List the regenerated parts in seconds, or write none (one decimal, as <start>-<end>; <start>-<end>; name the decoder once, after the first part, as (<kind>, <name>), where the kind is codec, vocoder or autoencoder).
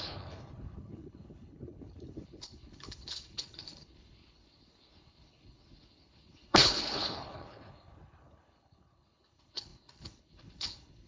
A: 0.0-11.1 (codec, HILCodec)